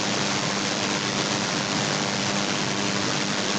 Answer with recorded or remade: recorded